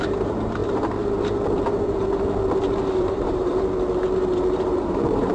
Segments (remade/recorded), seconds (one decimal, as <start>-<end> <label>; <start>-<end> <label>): 0.0-0.6 remade; 0.6-3.0 recorded; 3.0-3.5 remade; 3.5-4.8 recorded; 4.8-5.3 remade